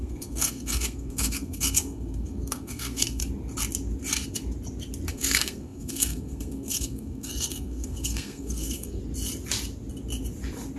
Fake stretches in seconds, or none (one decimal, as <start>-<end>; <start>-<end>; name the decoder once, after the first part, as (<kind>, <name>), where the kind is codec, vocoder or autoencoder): 0.0-3.2 (codec, SNAC); 5.1-9.0

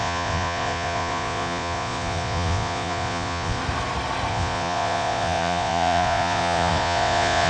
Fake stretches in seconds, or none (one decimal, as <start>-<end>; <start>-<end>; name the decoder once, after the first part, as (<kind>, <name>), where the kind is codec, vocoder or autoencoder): 0.0-3.6 (vocoder, Vocos); 4.3-7.5

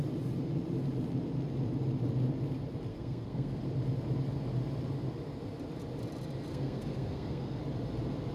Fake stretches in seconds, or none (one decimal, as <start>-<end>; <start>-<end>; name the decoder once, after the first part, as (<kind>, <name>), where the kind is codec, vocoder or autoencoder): 2.9-3.6 (codec, SNAC); 6.5-7.6